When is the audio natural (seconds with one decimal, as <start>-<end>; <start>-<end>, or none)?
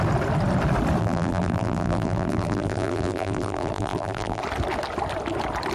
0.0-1.0; 4.4-5.7